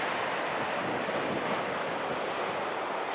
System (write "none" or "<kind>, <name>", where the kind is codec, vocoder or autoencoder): none